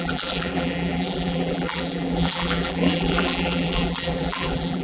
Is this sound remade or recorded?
remade